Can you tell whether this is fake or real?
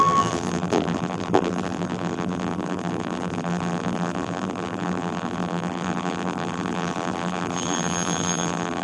fake